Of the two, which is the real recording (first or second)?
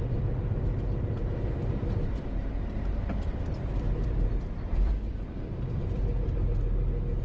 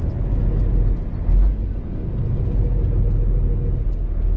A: second